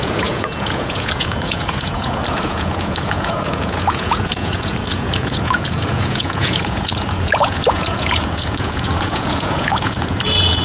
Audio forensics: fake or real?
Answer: fake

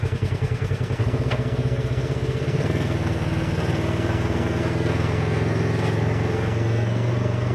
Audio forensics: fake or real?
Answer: fake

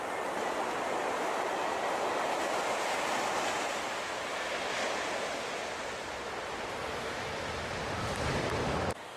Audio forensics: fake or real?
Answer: real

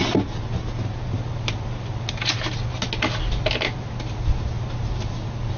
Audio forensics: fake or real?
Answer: real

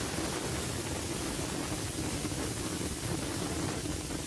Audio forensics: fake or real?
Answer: real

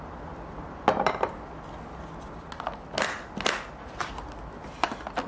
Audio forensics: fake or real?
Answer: real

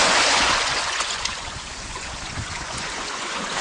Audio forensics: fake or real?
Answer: fake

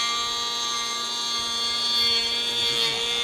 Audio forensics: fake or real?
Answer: real